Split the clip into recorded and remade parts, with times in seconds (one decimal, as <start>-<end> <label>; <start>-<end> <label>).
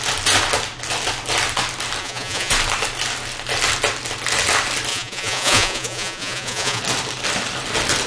0.0-2.0 recorded; 2.0-2.5 remade; 2.5-4.9 recorded; 4.9-6.8 remade; 6.8-8.1 recorded